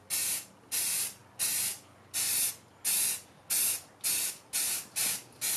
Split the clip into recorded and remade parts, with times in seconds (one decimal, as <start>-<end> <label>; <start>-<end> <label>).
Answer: 0.0-5.6 recorded